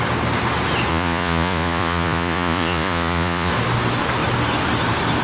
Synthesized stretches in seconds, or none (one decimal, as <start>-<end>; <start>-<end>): 0.9-3.5